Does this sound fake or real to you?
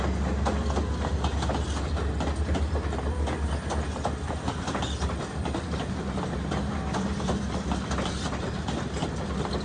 real